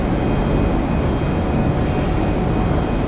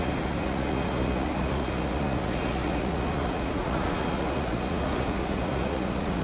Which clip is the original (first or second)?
first